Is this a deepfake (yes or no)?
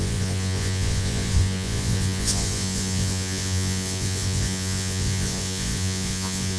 yes